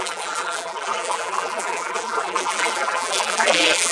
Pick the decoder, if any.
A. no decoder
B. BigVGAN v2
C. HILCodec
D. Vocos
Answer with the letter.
B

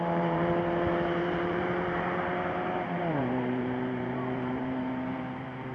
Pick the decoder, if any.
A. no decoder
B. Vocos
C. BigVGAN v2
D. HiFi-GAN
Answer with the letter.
C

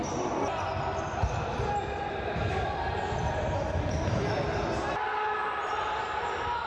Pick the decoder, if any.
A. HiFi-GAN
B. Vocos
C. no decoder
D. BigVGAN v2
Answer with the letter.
C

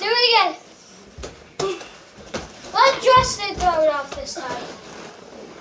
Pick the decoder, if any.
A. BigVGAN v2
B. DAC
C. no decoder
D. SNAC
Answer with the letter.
A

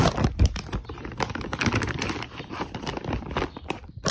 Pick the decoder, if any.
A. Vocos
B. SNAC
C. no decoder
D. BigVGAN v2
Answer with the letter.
D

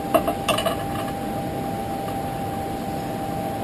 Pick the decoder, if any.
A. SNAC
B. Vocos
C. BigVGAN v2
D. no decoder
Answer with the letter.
D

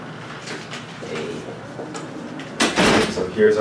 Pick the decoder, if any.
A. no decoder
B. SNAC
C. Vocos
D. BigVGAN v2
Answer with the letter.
D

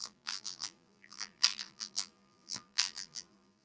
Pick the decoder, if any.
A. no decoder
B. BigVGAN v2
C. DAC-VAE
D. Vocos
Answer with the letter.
B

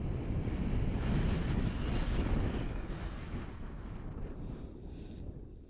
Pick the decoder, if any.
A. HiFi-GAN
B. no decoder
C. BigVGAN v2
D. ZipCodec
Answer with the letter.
B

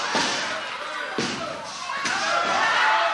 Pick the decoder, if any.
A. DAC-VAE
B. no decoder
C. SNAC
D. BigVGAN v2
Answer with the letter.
B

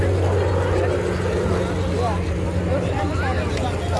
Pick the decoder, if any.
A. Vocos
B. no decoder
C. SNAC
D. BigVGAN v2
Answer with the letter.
B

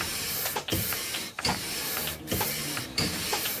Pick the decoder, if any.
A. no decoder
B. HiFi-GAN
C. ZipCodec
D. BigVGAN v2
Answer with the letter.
D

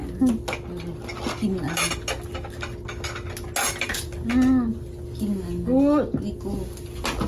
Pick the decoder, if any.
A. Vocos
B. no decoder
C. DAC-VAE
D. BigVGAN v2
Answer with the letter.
B